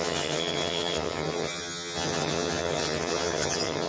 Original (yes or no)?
no